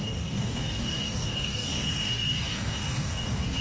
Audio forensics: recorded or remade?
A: remade